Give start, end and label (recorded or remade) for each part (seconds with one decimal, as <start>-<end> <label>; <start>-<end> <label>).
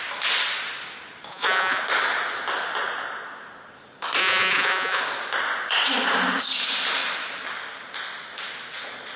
0.0-1.3 recorded; 1.3-1.8 remade; 1.8-4.2 recorded; 4.2-5.0 remade; 5.0-9.2 recorded